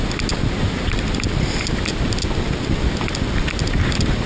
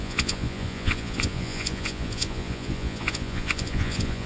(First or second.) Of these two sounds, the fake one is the second